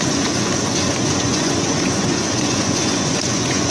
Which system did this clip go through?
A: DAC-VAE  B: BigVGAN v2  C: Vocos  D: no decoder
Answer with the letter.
C